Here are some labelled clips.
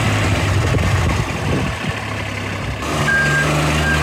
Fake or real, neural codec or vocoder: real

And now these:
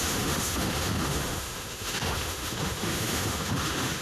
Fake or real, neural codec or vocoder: fake, autoencoder, DAC-VAE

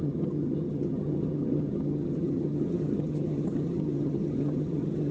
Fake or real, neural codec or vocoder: fake, vocoder, HiFi-GAN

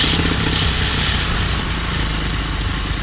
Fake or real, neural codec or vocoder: real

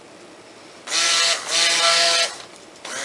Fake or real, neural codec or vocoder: real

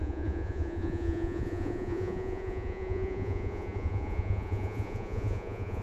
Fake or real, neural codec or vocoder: fake, vocoder, Vocos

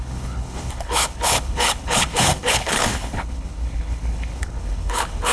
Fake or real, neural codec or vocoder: fake, codec, HILCodec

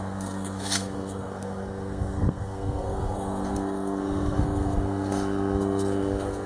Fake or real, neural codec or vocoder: fake, codec, SNAC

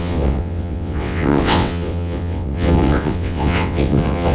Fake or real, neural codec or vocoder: fake, vocoder, WaveNeXt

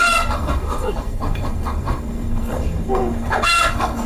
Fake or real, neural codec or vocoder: fake, codec, SNAC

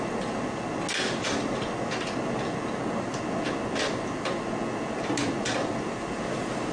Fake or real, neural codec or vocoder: real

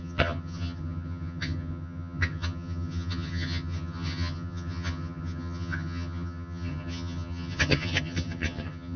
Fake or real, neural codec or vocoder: fake, vocoder, HiFi-GAN